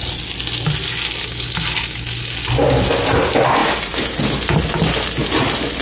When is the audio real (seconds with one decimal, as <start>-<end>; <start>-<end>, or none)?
0.0-5.8